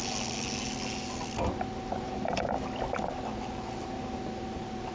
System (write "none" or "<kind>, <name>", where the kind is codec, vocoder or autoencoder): none